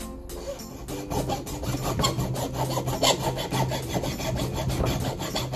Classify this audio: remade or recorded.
recorded